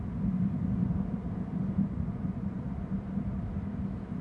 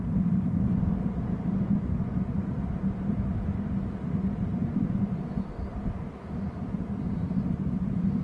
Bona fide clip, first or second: first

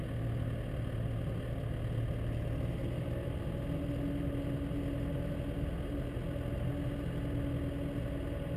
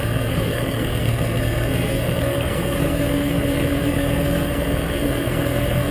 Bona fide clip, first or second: first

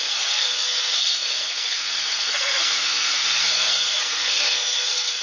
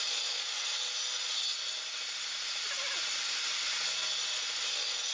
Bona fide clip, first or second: second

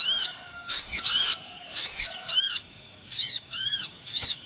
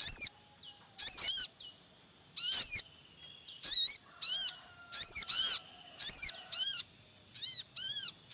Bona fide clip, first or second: second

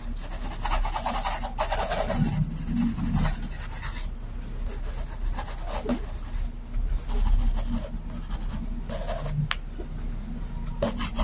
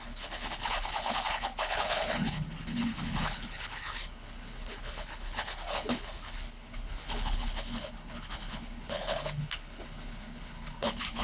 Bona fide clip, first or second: first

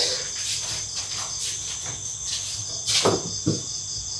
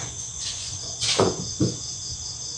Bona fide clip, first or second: first